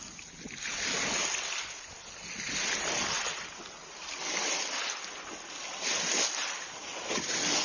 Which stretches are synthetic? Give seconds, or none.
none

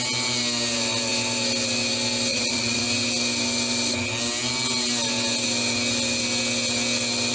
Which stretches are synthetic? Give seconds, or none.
2.3-2.8 (vocoder, Vocos)

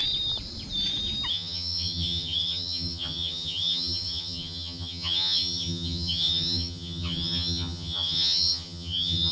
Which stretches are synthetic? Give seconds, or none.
1.3-9.3 (vocoder, HiFi-GAN)